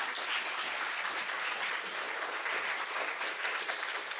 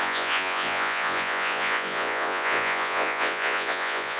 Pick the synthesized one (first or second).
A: second